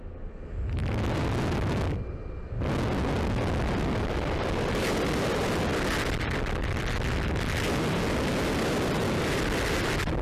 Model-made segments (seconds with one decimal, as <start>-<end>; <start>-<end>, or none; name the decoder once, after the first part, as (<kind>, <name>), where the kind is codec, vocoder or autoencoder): none

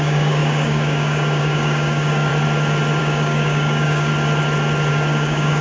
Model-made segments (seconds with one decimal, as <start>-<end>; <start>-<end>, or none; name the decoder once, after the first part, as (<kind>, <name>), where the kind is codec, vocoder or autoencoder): 0.0-2.3 (codec, DAC); 3.0-4.1; 4.9-5.6

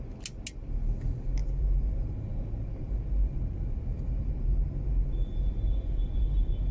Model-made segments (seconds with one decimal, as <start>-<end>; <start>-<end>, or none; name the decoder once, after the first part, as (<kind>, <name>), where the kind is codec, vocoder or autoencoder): 1.4-4.4 (vocoder, BigVGAN v2); 5.2-6.7

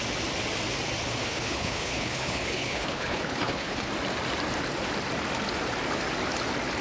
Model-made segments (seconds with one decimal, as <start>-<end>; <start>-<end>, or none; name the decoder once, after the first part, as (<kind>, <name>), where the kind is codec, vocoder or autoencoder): 1.2-3.9 (codec, HILCodec)

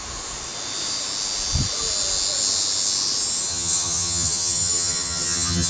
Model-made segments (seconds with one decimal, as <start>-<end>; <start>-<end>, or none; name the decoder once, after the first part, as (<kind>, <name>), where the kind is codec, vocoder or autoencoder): 3.5-5.7 (vocoder, HiFi-GAN)

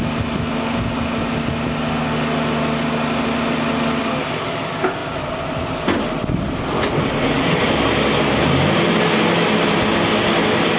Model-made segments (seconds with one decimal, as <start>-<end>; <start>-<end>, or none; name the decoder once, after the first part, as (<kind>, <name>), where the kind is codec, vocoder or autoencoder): none

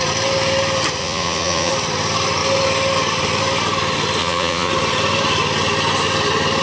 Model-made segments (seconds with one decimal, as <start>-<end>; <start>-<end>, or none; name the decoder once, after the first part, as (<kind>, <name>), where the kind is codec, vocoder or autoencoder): 1.0-1.7 (vocoder, Vocos); 4.2-4.7

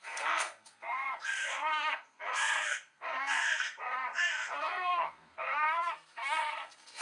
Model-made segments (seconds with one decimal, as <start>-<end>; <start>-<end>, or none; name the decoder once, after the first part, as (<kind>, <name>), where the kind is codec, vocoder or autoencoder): 0.0-7.0 (codec, SNAC)